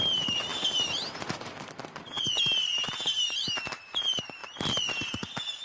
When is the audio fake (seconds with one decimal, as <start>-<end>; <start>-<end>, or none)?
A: none